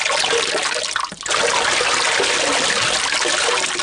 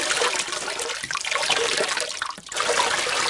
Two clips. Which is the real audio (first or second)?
first